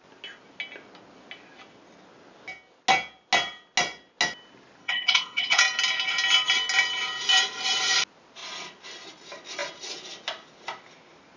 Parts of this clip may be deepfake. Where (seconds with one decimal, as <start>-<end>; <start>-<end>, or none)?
4.8-5.6